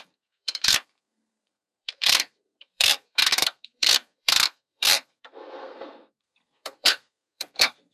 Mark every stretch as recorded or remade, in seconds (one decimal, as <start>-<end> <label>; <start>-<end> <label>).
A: 0.0-7.9 remade